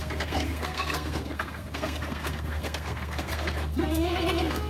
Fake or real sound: fake